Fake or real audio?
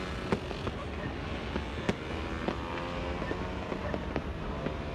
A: real